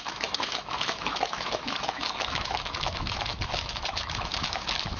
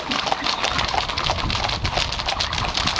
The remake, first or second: first